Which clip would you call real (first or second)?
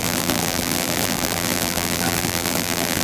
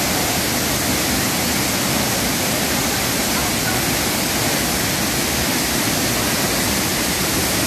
second